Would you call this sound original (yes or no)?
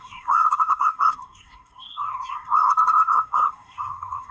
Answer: no